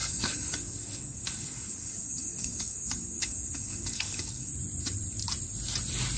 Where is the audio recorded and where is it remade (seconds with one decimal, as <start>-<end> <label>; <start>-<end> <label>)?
0.0-4.5 remade; 4.5-6.2 recorded